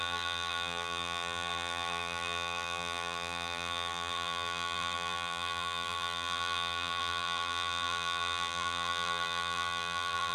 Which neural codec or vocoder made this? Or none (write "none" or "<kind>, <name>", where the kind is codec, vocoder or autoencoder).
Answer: vocoder, BigVGAN v2